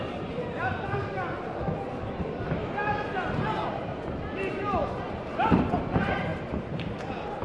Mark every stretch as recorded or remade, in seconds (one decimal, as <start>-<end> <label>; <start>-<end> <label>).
0.0-7.4 remade